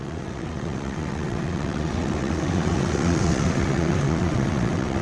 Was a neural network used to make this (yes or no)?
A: yes